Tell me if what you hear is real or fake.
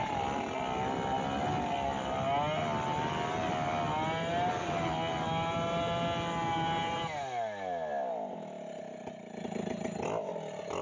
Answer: real